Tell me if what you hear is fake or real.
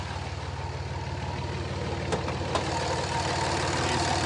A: real